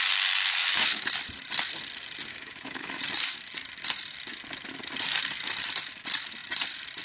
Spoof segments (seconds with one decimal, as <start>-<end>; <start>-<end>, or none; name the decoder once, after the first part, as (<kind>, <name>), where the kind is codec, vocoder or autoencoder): 0.6-1.1 (autoencoder, DAC-VAE); 2.3-3.0